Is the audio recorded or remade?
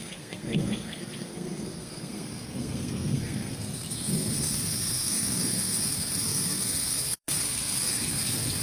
remade